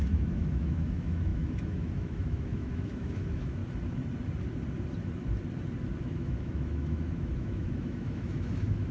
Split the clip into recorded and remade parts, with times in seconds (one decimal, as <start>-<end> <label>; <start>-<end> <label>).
0.0-3.6 remade; 3.6-6.0 recorded; 6.0-8.9 remade